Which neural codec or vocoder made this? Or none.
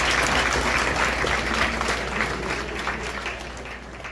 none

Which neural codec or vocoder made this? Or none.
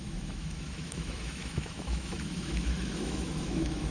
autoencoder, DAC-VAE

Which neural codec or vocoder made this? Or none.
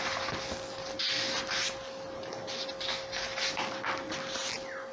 none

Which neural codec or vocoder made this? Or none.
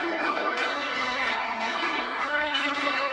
codec, SNAC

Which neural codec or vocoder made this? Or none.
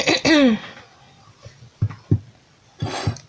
none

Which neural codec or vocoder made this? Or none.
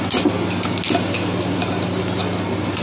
none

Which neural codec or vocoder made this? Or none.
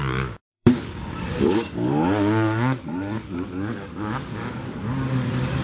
codec, DAC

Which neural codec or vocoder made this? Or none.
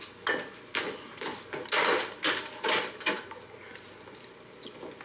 none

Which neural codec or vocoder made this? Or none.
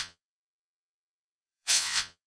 vocoder, WaveNeXt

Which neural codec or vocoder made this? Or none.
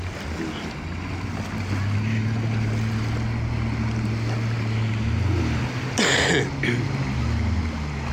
none